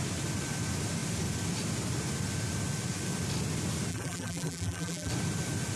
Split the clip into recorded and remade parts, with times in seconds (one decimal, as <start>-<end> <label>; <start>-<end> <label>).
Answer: 0.0-3.9 recorded; 3.9-5.1 remade; 5.1-5.8 recorded